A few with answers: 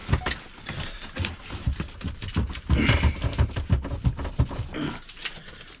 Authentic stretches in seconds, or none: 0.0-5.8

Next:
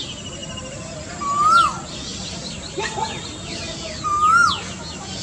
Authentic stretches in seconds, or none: 0.0-5.2

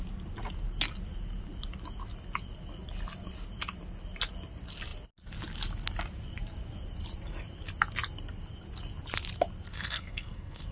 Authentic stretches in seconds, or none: 0.0-9.7

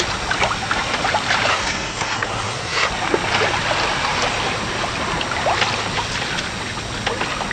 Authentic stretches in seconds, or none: 0.0-1.5; 2.9-7.5

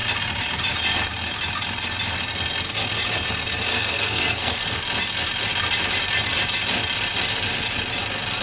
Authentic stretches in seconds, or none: 0.0-3.7; 4.8-8.4

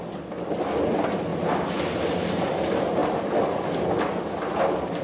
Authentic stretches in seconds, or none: 0.0-5.0